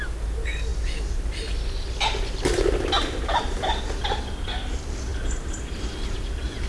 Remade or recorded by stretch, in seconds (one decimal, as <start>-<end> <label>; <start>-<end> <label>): 0.0-6.7 recorded

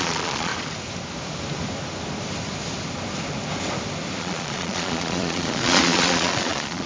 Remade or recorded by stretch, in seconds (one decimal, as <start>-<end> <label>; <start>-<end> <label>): 0.0-0.5 remade; 0.5-4.2 recorded; 4.2-6.9 remade

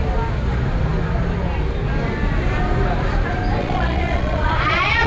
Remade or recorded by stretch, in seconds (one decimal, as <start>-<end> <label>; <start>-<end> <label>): 0.0-3.6 recorded; 3.6-5.1 remade

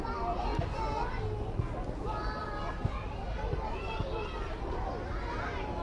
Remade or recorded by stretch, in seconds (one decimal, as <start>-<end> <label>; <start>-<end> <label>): 0.0-5.8 recorded

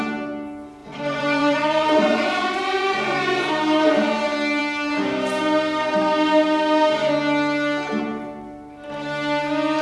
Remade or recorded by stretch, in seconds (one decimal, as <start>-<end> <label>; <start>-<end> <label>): 0.0-0.8 recorded; 0.8-3.5 remade; 3.5-9.8 recorded

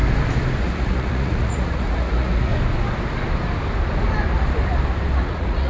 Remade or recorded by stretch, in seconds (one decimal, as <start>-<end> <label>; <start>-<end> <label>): 0.0-0.6 recorded; 0.6-2.5 remade; 2.5-5.2 recorded; 5.2-5.7 remade

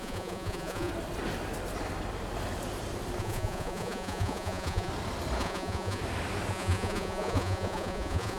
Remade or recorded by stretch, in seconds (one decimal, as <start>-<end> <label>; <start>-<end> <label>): 0.0-0.9 remade; 0.9-3.2 recorded; 3.2-4.9 remade; 4.9-5.4 recorded; 5.4-6.0 remade; 6.0-6.5 recorded; 6.5-8.4 remade

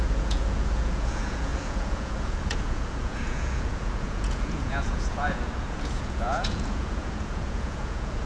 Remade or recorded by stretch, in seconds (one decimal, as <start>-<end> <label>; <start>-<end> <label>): 0.0-8.3 remade